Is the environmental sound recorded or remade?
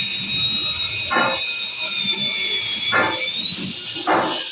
recorded